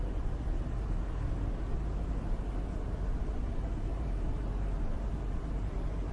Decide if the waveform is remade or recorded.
remade